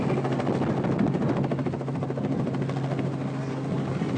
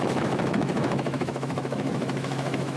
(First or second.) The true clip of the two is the first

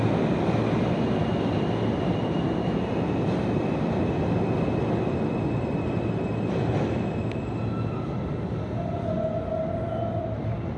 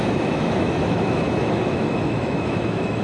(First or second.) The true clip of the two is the first